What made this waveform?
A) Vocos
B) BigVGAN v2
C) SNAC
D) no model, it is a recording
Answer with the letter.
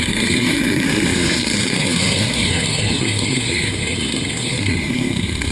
C